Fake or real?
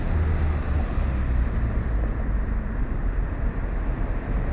real